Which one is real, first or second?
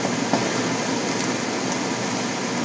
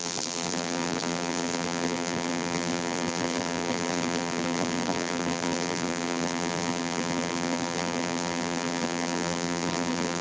first